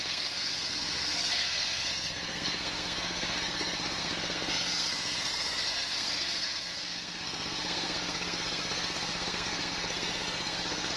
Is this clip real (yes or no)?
no